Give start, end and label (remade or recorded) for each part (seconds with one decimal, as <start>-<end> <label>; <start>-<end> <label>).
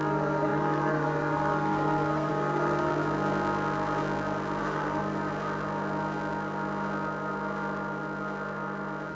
0.0-2.9 remade; 2.9-4.6 recorded; 4.6-5.0 remade; 5.0-9.1 recorded